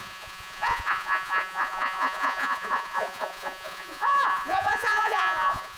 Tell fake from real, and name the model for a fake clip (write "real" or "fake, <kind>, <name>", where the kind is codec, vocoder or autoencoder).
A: fake, vocoder, Vocos